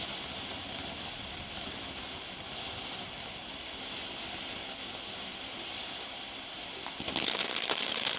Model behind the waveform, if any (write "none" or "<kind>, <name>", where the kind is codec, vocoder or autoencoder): none